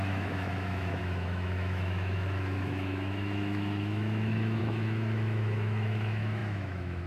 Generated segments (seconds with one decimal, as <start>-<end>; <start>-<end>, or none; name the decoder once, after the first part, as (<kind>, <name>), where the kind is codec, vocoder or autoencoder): 0.0-7.1 (autoencoder, DAC-VAE)